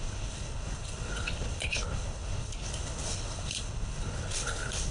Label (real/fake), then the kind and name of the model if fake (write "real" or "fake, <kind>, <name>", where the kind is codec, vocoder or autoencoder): fake, codec, HILCodec